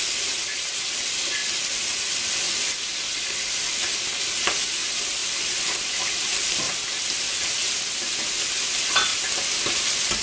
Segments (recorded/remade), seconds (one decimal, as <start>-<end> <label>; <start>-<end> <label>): 0.0-5.2 recorded; 5.2-7.4 remade; 7.4-9.1 recorded; 9.1-9.7 remade; 9.7-10.2 recorded